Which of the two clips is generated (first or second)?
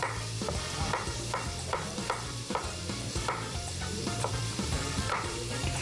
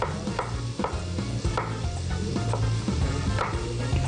first